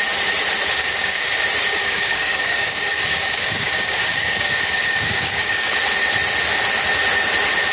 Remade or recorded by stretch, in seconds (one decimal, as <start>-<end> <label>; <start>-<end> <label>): 0.0-0.8 recorded; 0.8-1.4 remade; 1.4-1.8 recorded; 1.8-5.7 remade; 5.7-7.7 recorded